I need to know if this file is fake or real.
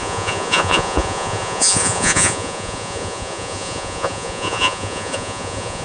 fake